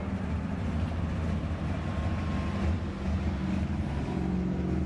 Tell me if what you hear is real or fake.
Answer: real